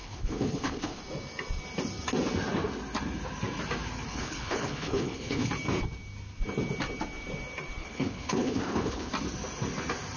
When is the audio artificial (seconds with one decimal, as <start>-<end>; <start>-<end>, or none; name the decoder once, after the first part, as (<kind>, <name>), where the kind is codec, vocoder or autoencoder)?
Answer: 0.0-1.0 (codec, HILCodec); 4.1-5.5; 7.8-9.1

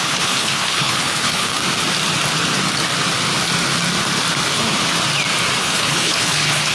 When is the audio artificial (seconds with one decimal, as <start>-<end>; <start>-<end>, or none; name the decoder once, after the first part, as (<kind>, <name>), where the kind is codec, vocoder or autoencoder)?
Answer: 0.0-1.6 (codec, HILCodec); 5.6-6.7

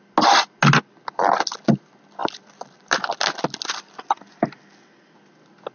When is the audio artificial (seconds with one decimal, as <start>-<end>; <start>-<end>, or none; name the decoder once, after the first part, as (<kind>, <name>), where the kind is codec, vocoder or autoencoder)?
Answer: none

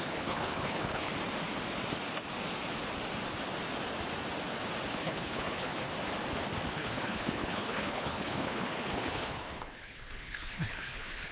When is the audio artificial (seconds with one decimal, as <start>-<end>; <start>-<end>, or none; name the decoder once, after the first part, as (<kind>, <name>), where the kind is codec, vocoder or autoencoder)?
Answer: 0.0-1.1 (codec, HILCodec); 4.9-5.9; 6.7-11.3

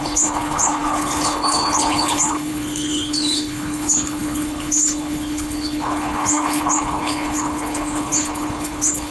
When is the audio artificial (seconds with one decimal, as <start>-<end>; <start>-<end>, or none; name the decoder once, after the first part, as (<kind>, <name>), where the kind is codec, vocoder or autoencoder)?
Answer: 0.0-9.1 (codec, HILCodec)

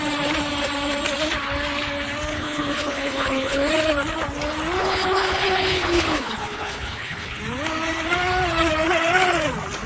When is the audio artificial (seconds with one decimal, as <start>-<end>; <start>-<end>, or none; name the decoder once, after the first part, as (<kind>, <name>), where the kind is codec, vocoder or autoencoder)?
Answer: 2.3-3.7 (codec, HILCodec); 4.8-7.4

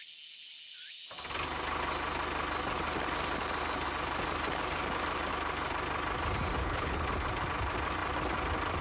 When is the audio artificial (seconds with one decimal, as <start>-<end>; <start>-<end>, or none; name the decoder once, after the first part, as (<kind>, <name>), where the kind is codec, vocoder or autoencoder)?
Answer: 6.6-7.1 (codec, HILCodec)